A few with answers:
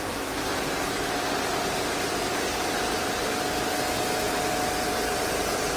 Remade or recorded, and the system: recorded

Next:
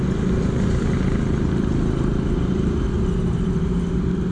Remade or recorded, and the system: recorded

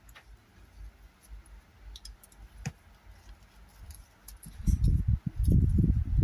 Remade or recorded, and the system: recorded